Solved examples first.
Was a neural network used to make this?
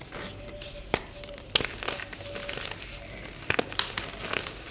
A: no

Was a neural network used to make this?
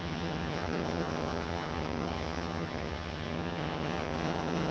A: yes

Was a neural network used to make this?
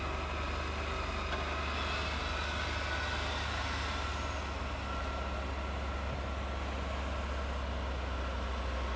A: no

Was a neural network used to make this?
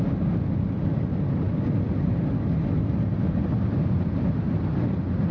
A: no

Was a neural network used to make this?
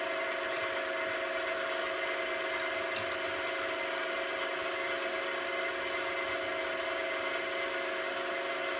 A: no